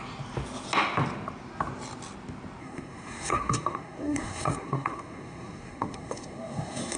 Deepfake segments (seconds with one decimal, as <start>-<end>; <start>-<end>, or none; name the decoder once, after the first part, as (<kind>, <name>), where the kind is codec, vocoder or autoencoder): 2.6-7.0 (codec, SNAC)